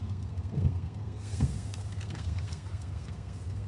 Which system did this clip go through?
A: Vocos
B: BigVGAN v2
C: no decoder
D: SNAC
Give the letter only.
D